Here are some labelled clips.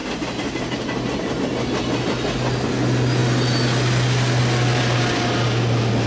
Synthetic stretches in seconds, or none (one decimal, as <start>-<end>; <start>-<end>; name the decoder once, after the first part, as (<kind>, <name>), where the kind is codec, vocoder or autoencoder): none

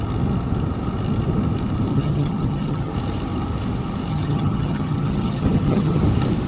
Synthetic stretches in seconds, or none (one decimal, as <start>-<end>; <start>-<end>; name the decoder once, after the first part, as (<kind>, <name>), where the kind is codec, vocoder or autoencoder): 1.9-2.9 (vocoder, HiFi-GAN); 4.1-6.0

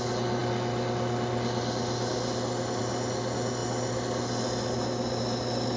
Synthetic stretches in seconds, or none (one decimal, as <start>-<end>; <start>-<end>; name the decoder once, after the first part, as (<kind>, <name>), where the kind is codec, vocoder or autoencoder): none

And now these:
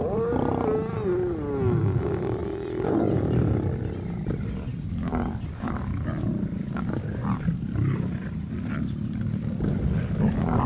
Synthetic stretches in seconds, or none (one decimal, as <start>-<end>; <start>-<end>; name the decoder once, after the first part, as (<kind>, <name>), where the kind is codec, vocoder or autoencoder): none